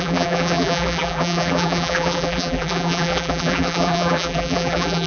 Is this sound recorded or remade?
remade